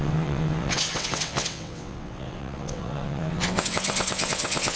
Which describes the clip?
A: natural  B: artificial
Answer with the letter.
B